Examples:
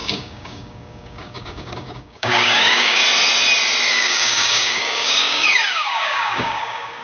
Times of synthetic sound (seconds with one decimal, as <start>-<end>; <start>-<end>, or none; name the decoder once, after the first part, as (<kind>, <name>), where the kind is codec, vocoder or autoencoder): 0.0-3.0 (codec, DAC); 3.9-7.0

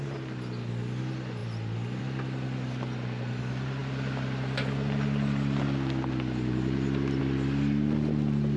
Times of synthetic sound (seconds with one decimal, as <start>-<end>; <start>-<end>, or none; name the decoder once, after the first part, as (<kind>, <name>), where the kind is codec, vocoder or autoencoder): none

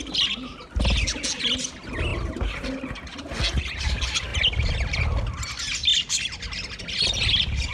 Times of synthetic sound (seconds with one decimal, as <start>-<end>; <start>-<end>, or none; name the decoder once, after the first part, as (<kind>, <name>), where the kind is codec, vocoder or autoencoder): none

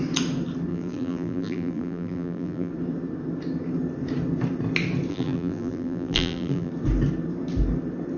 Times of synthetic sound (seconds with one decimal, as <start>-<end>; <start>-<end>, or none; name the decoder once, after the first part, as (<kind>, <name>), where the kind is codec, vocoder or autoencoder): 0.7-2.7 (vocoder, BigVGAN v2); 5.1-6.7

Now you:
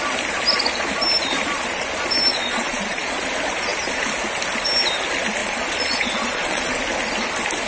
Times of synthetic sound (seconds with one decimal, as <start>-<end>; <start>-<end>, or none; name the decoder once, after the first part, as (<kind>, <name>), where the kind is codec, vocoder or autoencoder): 2.3-3.3 (vocoder, Vocos); 5.4-6.8

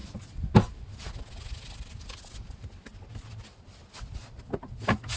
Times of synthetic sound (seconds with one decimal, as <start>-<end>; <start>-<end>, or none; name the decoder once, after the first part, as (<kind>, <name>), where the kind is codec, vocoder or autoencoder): none

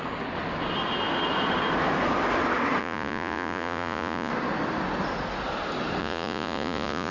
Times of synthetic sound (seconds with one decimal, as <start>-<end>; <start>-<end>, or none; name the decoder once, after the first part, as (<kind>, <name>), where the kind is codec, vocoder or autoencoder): 2.8-4.3 (vocoder, Vocos); 6.0-7.1

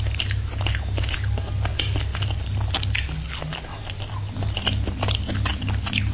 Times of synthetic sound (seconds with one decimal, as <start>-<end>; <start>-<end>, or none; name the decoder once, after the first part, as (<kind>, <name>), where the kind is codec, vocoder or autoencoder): none